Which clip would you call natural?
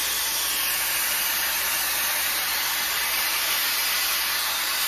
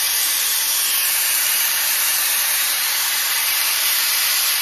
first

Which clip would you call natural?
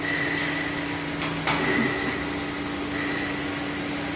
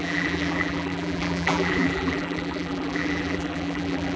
first